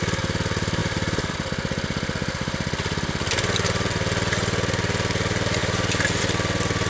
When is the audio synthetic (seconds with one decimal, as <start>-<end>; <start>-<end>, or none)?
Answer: none